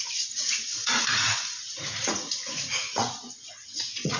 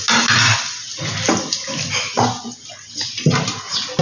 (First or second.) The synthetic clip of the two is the first